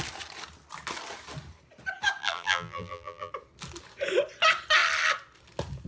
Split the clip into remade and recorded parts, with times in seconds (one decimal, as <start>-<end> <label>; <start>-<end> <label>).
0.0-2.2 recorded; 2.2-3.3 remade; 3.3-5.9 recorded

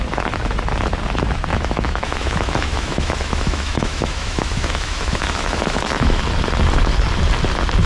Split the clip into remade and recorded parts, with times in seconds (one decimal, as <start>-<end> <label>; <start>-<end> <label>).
0.0-1.5 recorded; 1.5-6.2 remade; 6.2-7.9 recorded

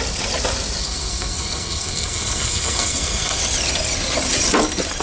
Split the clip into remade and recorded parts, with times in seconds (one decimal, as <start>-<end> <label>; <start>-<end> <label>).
0.0-0.8 recorded; 0.8-3.4 remade; 3.4-5.0 recorded

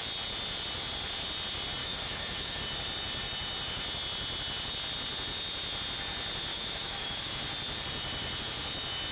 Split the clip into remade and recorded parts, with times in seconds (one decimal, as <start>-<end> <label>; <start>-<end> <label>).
0.0-1.8 recorded; 1.8-2.6 remade; 2.6-6.5 recorded; 6.5-7.3 remade; 7.3-9.1 recorded

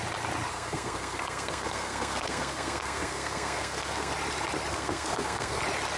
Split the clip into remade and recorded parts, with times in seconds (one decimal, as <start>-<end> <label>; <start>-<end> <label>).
0.0-0.5 recorded; 0.5-4.1 remade; 4.1-4.7 recorded; 4.7-5.6 remade; 5.6-6.0 recorded